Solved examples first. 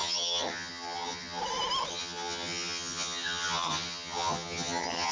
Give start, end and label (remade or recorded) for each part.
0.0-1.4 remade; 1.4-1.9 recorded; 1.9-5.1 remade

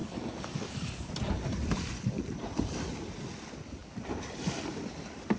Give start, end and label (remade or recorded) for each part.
0.0-1.1 remade; 1.1-5.4 recorded

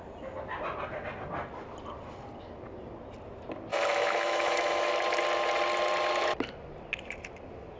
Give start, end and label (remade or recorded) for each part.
0.0-3.7 recorded; 3.7-4.9 remade; 4.9-7.8 recorded